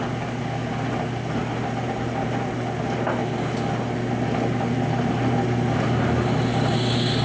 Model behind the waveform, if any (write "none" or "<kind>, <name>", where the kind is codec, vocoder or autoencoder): none